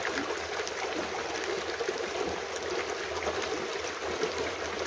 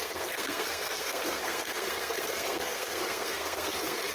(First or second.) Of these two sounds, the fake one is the second